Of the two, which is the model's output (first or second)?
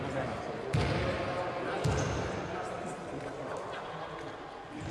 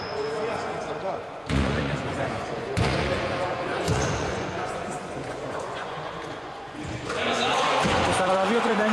second